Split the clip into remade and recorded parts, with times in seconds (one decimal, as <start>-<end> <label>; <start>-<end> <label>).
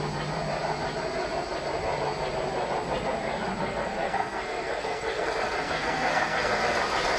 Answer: 0.0-3.6 recorded; 3.6-6.6 remade; 6.6-7.2 recorded